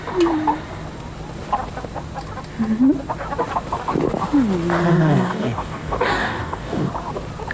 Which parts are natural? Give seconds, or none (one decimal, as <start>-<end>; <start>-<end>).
0.0-4.9; 6.9-7.5